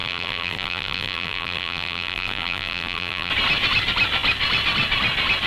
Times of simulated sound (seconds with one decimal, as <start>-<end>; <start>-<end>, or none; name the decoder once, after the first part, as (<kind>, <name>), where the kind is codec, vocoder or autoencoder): 0.0-3.3 (vocoder, BigVGAN v2)